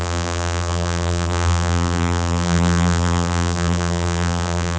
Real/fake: fake